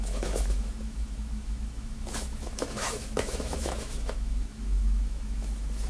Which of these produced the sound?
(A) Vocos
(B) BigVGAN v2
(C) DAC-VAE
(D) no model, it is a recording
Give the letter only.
C